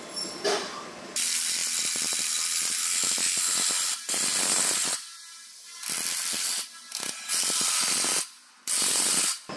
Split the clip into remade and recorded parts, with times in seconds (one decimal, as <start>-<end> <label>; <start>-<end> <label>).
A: 0.0-9.6 recorded